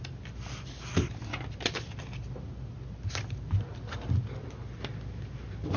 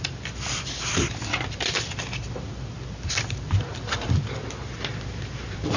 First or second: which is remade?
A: second